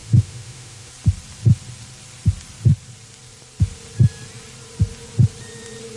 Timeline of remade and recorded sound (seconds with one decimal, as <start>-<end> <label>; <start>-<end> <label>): 0.0-0.9 remade; 0.9-6.0 recorded